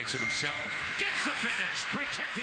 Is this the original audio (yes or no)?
no